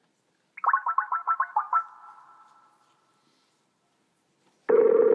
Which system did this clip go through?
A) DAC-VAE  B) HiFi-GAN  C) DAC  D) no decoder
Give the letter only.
D